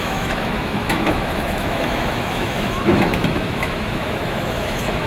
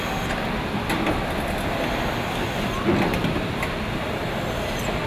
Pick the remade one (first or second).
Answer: first